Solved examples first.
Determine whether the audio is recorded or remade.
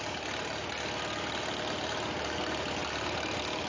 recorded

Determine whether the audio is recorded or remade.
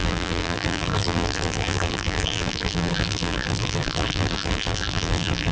remade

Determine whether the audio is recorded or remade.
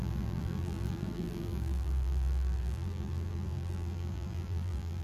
remade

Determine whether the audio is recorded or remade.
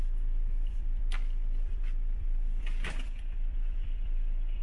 remade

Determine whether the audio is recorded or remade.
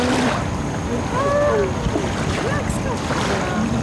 recorded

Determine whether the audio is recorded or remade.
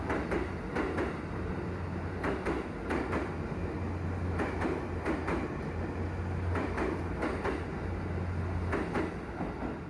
recorded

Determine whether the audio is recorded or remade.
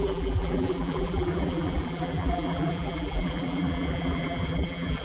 remade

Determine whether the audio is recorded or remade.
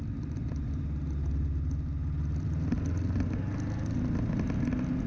recorded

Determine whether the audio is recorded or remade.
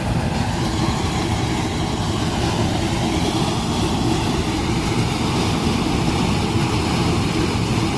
recorded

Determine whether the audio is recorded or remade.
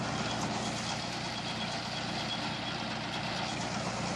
recorded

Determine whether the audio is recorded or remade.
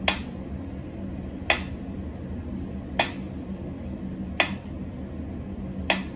recorded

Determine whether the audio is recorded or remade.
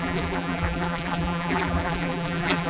remade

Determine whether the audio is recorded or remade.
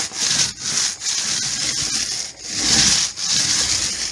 recorded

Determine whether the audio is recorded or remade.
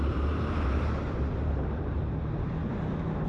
remade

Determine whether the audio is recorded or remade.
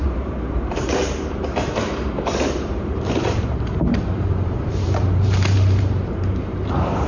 remade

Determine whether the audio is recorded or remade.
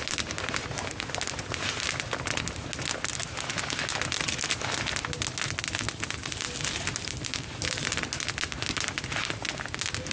recorded